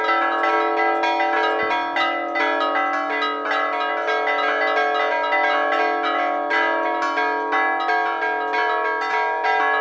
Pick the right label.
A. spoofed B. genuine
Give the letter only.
B